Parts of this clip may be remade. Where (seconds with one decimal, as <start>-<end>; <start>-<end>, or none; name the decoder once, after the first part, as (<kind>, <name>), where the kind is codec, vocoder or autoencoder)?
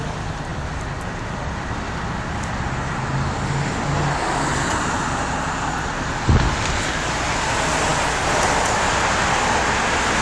0.5-1.7 (vocoder, BigVGAN v2)